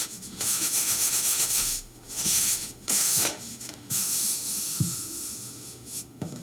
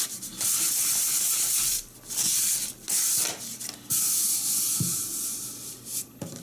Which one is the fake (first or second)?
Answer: first